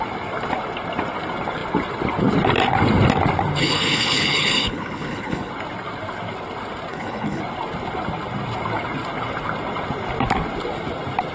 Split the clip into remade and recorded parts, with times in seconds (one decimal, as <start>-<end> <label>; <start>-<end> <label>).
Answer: 0.0-3.6 recorded; 3.6-5.5 remade; 5.5-6.9 recorded; 6.9-7.4 remade; 7.4-11.3 recorded